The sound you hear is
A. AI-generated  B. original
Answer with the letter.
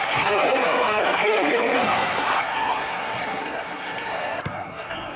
A